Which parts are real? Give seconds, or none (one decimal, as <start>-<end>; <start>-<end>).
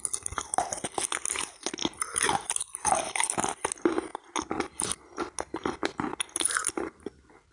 0.0-7.5